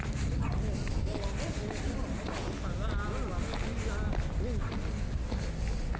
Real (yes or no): yes